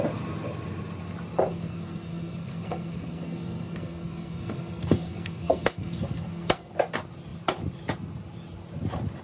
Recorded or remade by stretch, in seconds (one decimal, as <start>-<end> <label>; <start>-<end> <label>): 0.0-1.5 recorded; 1.5-6.7 remade; 6.7-9.2 recorded